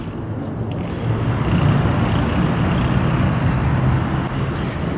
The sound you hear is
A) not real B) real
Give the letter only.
B